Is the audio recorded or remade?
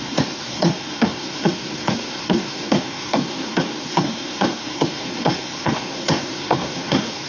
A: remade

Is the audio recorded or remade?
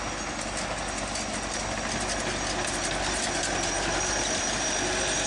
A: recorded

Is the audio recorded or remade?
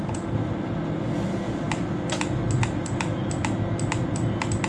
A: recorded